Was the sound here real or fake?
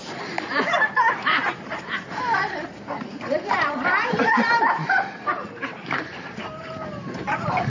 fake